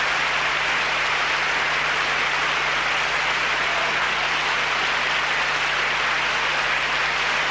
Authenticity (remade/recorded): recorded